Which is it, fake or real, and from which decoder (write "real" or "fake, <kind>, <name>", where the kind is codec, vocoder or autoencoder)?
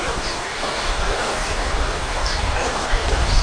fake, codec, DAC